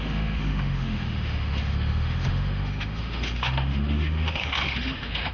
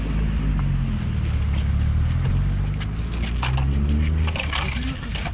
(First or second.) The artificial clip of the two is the first